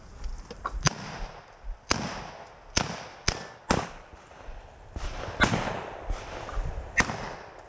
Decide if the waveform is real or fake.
real